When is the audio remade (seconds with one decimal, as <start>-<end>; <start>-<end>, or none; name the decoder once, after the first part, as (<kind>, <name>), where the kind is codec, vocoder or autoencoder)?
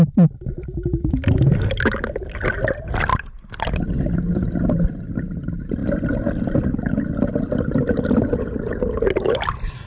none